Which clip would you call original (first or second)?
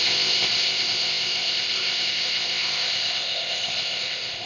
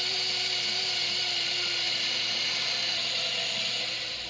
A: second